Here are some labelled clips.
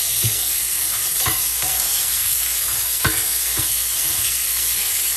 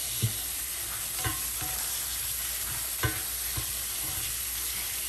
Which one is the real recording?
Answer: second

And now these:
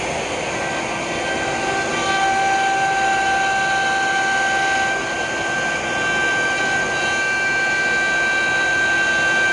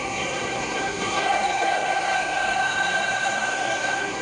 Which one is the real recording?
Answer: first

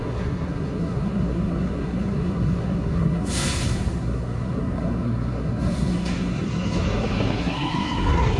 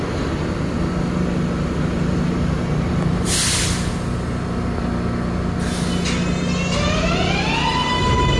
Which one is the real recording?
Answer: second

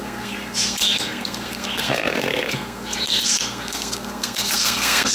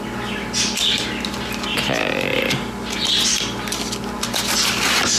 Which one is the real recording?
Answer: second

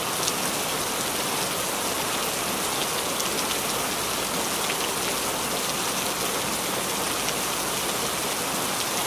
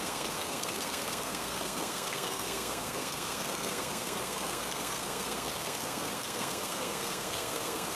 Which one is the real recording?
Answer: first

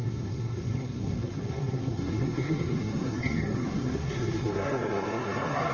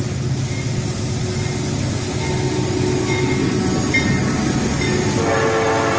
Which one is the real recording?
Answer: second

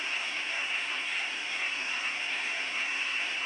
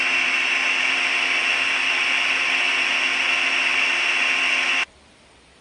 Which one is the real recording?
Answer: second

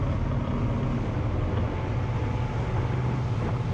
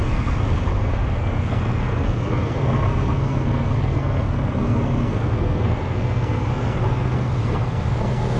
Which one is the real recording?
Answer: first